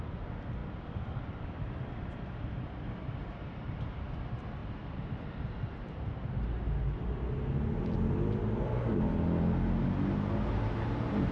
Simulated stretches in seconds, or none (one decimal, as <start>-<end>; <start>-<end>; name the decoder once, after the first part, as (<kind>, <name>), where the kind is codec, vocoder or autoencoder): 0.6-3.6 (vocoder, BigVGAN v2); 4.6-6.1